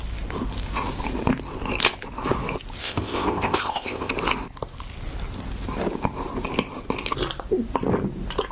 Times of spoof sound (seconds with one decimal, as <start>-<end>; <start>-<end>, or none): 2.8-4.1